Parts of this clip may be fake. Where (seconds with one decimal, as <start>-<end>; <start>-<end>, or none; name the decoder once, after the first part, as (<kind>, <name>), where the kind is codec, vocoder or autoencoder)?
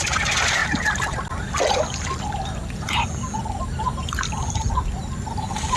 none